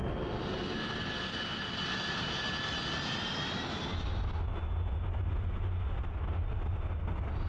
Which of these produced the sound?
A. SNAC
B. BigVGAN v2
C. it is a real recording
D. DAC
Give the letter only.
C